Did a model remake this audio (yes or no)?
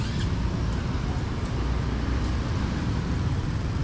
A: no